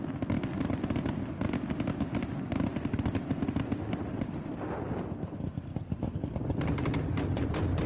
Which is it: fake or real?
real